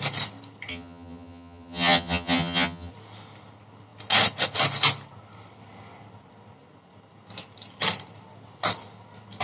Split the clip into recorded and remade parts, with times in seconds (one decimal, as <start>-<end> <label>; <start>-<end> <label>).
0.0-0.7 recorded; 0.7-2.9 remade; 2.9-9.4 recorded